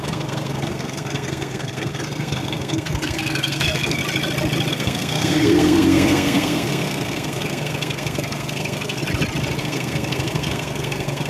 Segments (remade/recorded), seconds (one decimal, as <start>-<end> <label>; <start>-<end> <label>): 0.0-4.0 remade; 4.0-4.7 recorded; 4.7-9.0 remade; 9.0-9.6 recorded; 9.6-11.3 remade